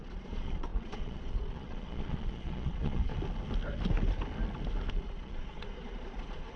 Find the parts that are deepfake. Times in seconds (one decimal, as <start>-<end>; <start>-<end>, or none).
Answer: 0.0-3.1; 4.9-6.6